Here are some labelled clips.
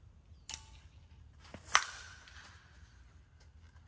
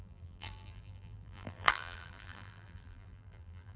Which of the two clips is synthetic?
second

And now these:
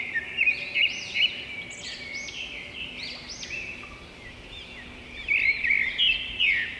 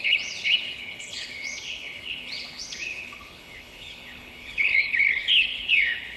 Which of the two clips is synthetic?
second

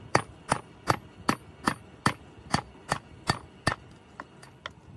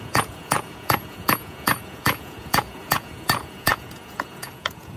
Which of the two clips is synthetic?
second